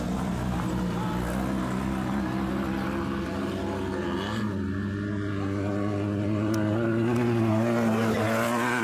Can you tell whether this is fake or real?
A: real